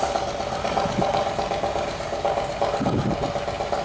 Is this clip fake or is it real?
real